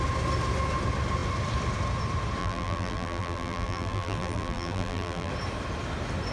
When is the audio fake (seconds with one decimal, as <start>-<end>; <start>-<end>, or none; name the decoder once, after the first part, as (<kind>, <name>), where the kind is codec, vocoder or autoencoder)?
2.4-5.3 (vocoder, BigVGAN v2)